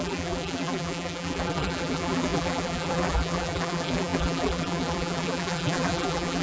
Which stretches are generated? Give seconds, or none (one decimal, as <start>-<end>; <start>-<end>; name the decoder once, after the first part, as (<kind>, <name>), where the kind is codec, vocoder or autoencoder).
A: 0.0-6.4 (vocoder, BigVGAN v2)

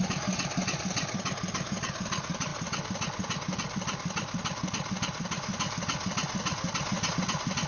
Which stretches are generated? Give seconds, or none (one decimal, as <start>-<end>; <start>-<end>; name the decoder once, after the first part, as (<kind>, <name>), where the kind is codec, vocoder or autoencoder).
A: none

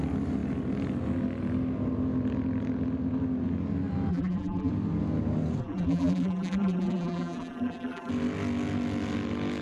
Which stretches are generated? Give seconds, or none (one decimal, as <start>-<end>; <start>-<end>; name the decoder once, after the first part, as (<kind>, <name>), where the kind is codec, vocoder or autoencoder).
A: 4.1-4.7 (vocoder, BigVGAN v2); 5.6-8.1

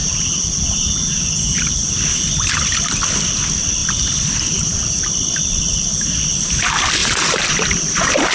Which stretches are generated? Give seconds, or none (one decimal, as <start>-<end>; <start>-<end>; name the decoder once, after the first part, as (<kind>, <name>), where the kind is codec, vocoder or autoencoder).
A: 0.0-2.3 (vocoder, BigVGAN v2); 3.8-4.8; 7.0-8.3

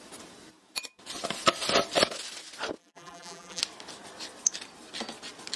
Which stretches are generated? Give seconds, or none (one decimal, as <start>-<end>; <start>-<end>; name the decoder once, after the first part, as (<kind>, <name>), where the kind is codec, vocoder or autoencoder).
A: 2.8-3.6 (vocoder, BigVGAN v2)